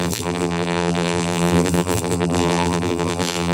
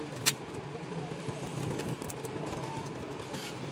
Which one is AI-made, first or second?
first